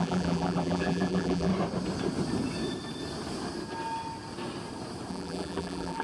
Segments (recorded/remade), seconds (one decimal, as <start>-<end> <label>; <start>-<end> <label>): 0.0-1.5 remade; 1.5-5.1 recorded; 5.1-6.0 remade